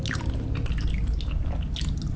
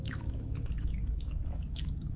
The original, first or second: first